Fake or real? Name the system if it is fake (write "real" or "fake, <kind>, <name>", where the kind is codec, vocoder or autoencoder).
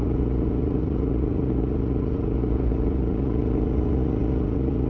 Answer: fake, vocoder, Vocos